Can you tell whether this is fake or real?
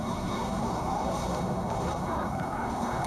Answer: fake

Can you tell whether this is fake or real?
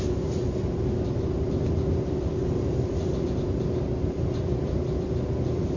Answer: real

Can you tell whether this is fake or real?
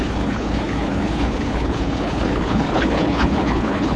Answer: fake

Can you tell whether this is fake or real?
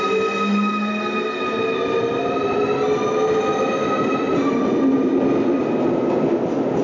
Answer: real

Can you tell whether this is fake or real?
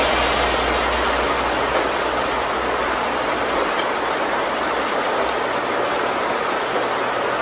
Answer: real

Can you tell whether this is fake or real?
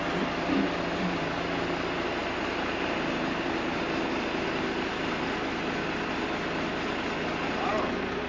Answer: real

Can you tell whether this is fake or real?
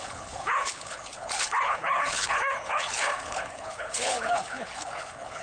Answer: fake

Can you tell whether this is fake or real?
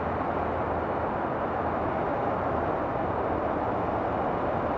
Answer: real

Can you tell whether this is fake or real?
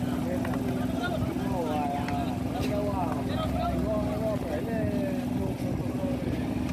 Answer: real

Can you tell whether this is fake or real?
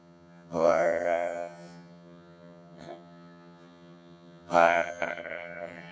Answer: fake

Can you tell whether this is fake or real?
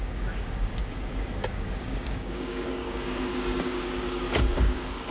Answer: fake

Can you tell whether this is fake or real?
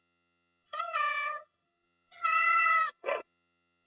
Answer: fake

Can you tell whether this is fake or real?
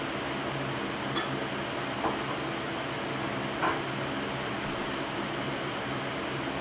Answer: real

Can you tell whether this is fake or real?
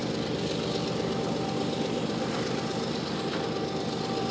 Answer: real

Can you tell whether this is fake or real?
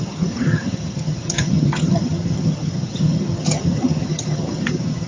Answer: fake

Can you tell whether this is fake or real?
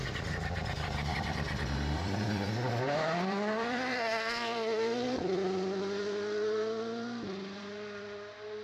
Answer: fake